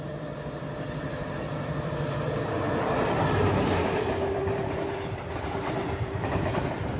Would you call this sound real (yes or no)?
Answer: no